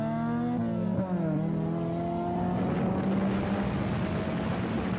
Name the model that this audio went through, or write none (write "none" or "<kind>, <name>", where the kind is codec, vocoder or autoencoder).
none